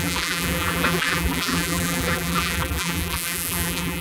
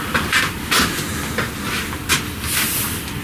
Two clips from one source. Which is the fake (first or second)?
first